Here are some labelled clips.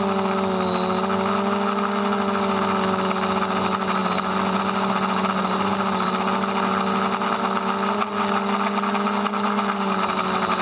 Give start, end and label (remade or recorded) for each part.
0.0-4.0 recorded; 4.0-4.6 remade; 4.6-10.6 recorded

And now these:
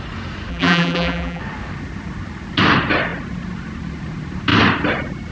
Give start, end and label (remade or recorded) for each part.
0.0-0.5 recorded; 0.5-1.4 remade; 1.4-5.3 recorded

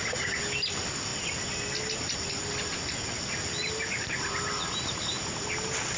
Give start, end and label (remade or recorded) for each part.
0.0-6.0 recorded